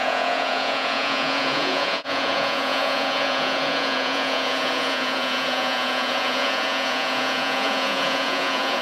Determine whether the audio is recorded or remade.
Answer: remade